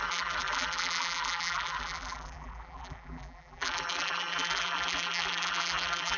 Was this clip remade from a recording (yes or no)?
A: yes